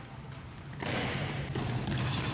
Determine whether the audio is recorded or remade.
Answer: recorded